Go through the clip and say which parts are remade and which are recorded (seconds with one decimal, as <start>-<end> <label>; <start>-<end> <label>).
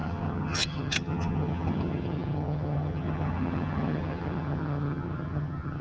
0.0-5.8 remade